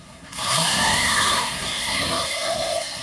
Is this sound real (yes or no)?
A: no